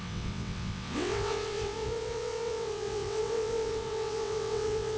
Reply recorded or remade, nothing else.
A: remade